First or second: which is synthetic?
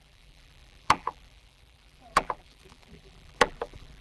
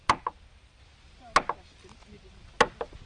first